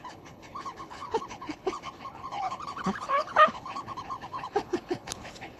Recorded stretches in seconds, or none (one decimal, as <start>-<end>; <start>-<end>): none